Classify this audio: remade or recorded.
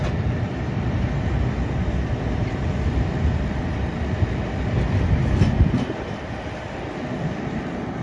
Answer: recorded